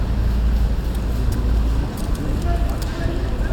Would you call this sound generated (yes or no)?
no